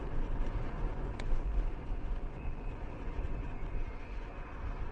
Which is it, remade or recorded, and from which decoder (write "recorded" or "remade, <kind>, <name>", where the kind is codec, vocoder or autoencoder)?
remade, vocoder, Vocos